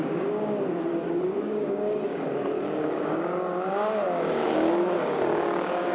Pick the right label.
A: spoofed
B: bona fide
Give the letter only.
A